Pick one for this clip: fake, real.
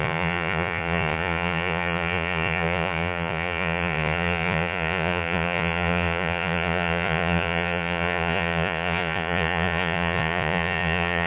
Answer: fake